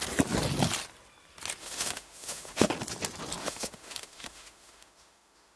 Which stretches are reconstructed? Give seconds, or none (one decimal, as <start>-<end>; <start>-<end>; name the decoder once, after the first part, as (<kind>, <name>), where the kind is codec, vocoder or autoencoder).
1.6-2.7 (autoencoder, DAC-VAE); 3.4-5.6